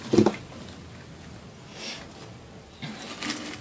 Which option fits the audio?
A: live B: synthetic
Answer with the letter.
A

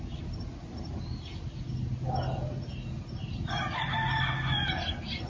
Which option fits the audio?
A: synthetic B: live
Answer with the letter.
B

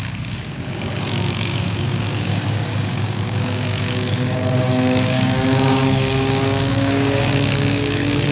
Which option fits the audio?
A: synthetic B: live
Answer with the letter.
A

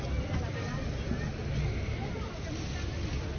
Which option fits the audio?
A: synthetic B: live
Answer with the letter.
B